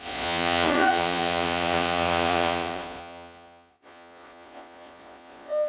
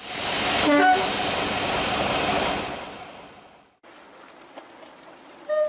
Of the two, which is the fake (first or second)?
first